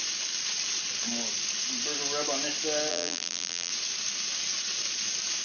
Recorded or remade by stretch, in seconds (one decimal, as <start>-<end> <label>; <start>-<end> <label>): 0.0-2.9 recorded; 2.9-3.7 remade; 3.7-5.4 recorded